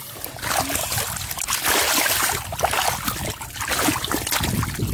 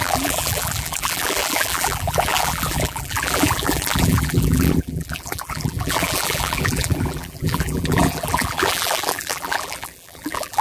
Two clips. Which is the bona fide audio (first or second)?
first